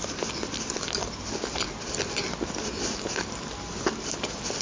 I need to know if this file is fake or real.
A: real